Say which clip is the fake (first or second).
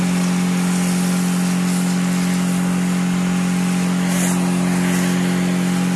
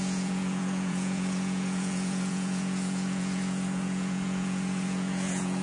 second